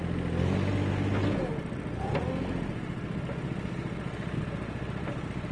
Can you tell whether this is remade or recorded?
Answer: recorded